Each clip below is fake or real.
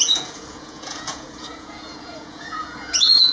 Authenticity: fake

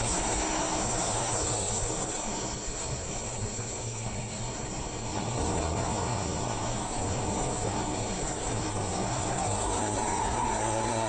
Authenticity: fake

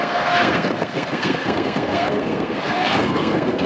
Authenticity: fake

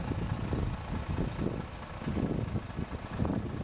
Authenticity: real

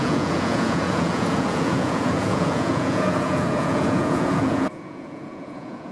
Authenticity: fake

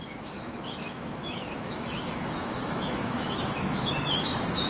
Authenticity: fake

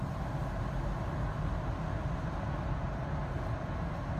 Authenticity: real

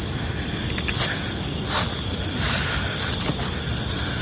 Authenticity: real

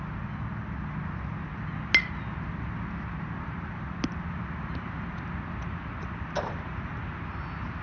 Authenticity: real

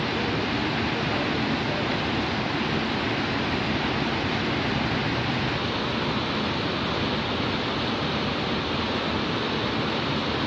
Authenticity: real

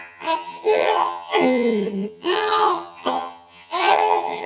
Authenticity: fake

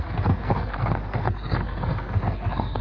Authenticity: fake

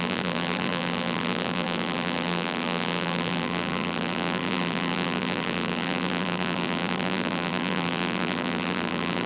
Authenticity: fake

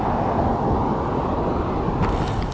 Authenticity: real